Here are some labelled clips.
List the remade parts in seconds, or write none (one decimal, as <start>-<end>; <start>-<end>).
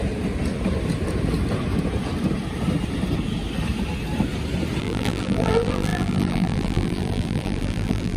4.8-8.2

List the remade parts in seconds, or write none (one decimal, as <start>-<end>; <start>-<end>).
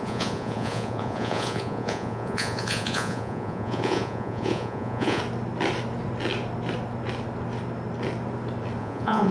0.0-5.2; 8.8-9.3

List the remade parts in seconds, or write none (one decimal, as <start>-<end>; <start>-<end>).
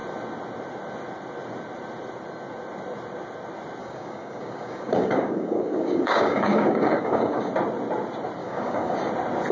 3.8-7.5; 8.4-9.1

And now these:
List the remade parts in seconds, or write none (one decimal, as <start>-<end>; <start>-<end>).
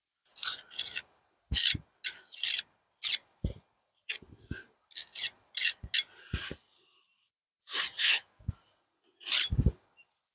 8.0-8.5